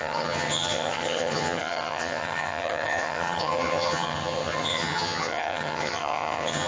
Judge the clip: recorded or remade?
remade